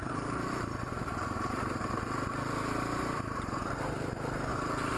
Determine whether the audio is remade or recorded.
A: remade